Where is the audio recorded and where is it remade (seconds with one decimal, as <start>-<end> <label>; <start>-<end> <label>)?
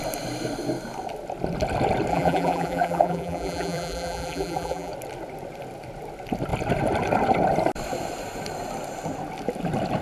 0.0-2.1 recorded; 2.1-4.9 remade; 4.9-10.0 recorded